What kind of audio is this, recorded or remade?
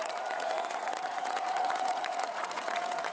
remade